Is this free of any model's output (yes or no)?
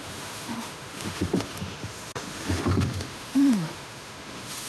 no